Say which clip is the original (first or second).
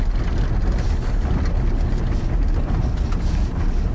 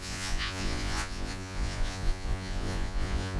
first